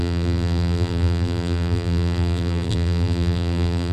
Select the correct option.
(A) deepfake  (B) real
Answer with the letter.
A